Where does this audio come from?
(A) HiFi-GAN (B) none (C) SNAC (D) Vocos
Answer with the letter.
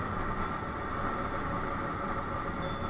B